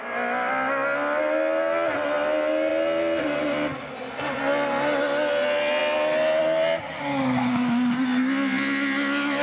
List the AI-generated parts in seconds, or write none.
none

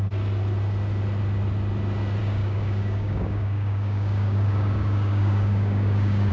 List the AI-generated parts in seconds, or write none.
2.2-6.3 (codec, DAC)